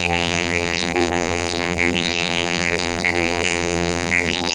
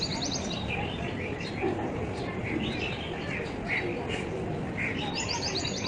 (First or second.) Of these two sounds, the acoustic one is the second